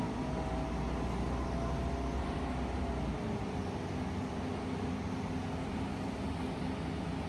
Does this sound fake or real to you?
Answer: real